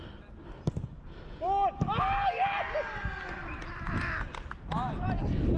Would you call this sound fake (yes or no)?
no